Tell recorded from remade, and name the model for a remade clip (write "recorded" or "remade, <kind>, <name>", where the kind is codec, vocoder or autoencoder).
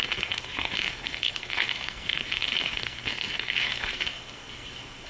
remade, codec, SNAC